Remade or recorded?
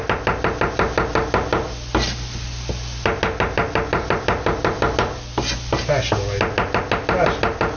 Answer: recorded